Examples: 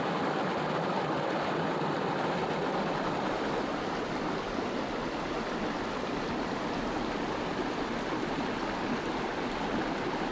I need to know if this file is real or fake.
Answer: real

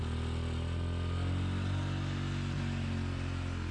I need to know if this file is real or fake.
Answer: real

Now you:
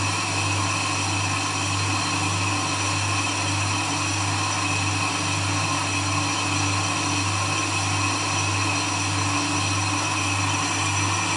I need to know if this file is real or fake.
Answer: real